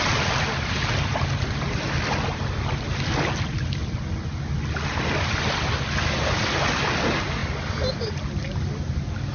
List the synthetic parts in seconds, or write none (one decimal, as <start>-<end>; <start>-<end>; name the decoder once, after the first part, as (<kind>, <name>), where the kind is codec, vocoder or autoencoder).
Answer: none